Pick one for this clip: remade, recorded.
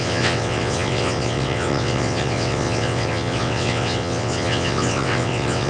remade